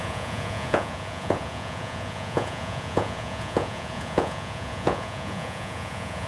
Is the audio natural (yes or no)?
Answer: no